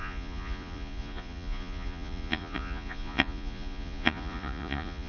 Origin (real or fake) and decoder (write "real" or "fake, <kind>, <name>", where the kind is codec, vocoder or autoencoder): fake, vocoder, Vocos